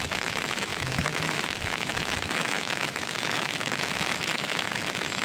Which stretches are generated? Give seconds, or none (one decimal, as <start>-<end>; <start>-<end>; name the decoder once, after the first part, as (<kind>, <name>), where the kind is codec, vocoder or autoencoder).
0.0-5.2 (autoencoder, DAC-VAE)